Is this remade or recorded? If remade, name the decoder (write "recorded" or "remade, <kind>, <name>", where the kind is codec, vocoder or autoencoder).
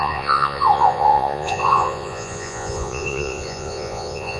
remade, vocoder, Vocos